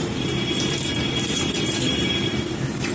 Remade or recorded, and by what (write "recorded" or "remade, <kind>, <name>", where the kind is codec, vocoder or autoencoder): remade, vocoder, BigVGAN v2